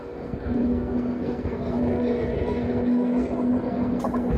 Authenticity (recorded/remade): remade